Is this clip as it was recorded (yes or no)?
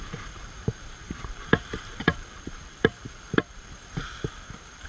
no